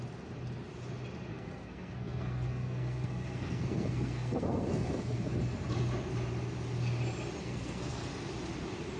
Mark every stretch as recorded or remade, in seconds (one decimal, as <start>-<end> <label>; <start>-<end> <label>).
0.0-1.3 recorded; 1.3-5.4 remade; 5.4-7.4 recorded; 7.4-8.1 remade; 8.1-9.0 recorded